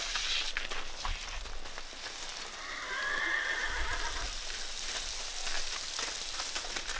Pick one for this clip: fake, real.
real